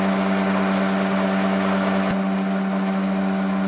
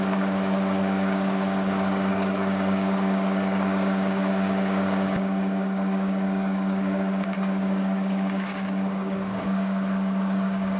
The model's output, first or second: second